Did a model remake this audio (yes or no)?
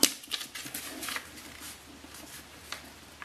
no